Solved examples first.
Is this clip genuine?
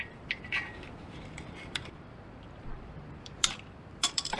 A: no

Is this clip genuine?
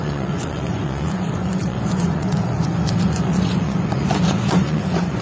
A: no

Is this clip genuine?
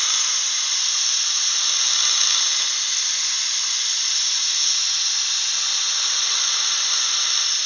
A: yes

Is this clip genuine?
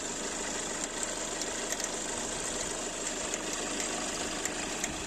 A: yes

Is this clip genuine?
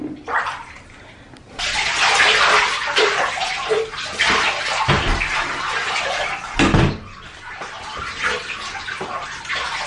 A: yes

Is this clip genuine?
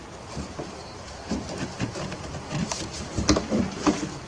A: yes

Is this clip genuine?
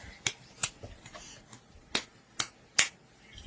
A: yes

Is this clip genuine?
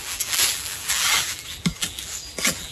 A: no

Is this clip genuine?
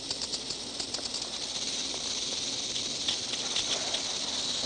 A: yes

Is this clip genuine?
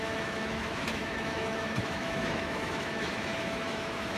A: no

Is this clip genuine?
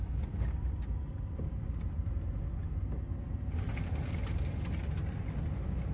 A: yes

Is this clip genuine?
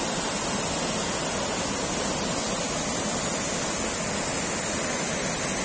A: yes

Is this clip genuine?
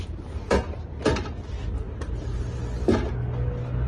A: yes